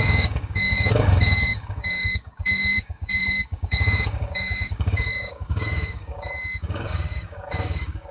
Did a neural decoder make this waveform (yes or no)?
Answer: yes